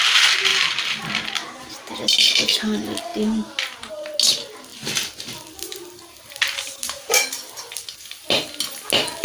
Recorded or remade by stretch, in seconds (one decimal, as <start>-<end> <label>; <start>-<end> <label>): 0.0-0.5 recorded; 0.5-1.6 remade; 1.6-4.7 recorded; 4.7-8.5 remade; 8.5-9.2 recorded